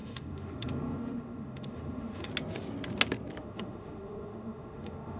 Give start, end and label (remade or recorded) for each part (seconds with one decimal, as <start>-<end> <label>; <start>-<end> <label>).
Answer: 0.0-2.3 remade; 2.3-3.4 recorded; 3.4-5.2 remade